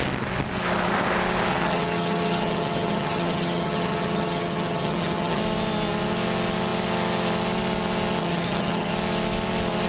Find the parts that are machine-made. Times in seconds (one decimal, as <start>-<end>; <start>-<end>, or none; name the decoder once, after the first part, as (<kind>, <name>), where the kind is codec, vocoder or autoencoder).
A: 1.5-5.4 (vocoder, HiFi-GAN); 8.2-8.9